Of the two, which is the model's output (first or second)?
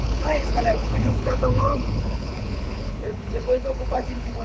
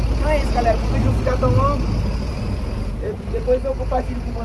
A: first